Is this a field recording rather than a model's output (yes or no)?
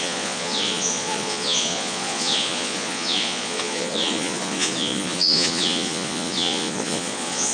no